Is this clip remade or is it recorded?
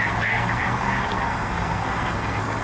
remade